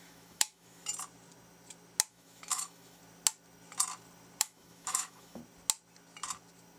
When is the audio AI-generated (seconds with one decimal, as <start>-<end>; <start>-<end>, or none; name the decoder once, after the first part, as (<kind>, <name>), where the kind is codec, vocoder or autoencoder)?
0.0-0.9 (autoencoder, DAC-VAE); 2.1-3.0; 4.4-5.4